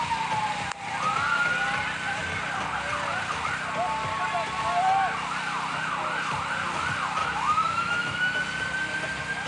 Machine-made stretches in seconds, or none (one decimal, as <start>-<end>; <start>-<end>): 7.2-8.4